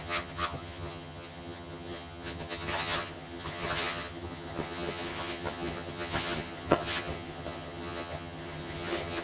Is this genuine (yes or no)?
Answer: no